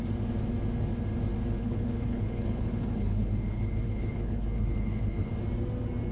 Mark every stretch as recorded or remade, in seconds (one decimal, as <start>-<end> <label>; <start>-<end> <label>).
0.0-1.6 recorded; 1.6-5.3 remade; 5.3-6.1 recorded